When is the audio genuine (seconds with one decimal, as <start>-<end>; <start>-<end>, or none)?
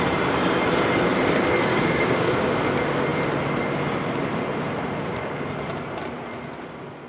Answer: 0.0-1.7; 2.5-5.1; 5.7-7.1